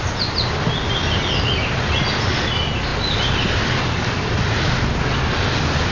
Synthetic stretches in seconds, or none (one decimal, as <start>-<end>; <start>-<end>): none